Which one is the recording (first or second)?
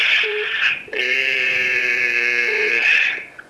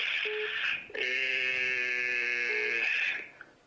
second